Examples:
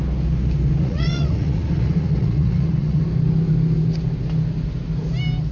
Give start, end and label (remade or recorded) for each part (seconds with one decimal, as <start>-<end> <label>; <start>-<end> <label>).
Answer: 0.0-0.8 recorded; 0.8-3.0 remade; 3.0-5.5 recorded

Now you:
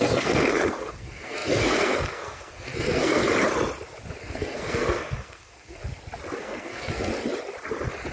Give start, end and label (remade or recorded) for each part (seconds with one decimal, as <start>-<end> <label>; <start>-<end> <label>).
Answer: 0.0-3.2 remade; 3.2-4.2 recorded; 4.2-5.8 remade; 5.8-6.4 recorded; 6.4-7.1 remade; 7.1-8.1 recorded

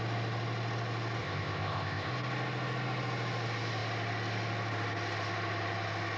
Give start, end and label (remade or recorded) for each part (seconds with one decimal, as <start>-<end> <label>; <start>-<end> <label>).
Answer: 0.0-1.2 recorded; 1.2-2.1 remade; 2.1-6.2 recorded